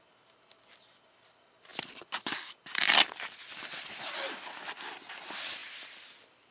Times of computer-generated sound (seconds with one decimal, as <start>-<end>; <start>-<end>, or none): none